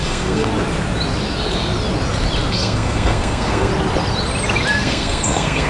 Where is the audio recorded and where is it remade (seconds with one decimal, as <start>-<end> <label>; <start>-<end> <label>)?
0.0-0.5 remade; 0.5-2.5 recorded; 2.5-3.7 remade; 3.7-4.7 recorded; 4.7-5.7 remade